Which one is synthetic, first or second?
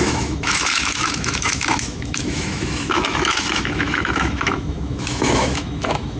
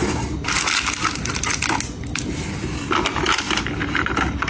first